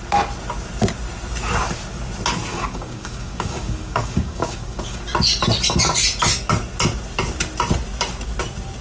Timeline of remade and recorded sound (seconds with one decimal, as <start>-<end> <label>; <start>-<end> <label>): 0.0-2.5 recorded; 2.5-5.0 remade; 5.0-8.8 recorded